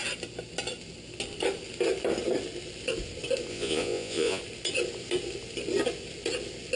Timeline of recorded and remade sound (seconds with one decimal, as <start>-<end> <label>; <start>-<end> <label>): 0.0-3.5 recorded; 3.5-4.4 remade; 4.4-6.8 recorded